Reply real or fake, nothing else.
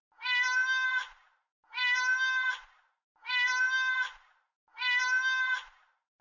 real